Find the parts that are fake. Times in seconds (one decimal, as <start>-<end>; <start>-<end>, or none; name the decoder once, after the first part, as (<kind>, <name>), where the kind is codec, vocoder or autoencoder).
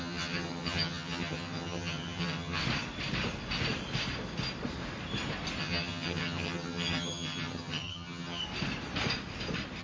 0.0-2.6 (vocoder, HiFi-GAN); 5.6-8.4